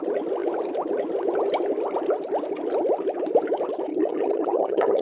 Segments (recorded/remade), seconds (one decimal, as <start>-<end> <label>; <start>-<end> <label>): 0.0-3.9 recorded; 3.9-5.0 remade